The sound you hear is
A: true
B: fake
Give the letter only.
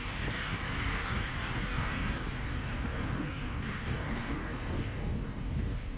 B